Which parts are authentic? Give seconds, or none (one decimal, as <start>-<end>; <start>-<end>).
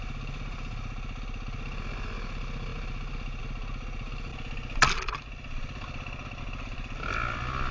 0.0-7.7